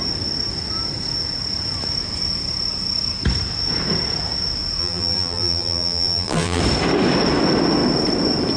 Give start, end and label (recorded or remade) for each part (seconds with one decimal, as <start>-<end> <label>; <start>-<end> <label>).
0.0-4.8 recorded; 4.8-6.6 remade; 6.6-8.6 recorded